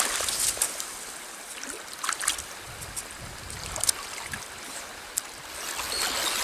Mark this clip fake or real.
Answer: real